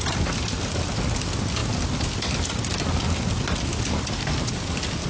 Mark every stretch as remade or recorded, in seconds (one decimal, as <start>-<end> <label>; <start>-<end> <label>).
0.0-5.1 recorded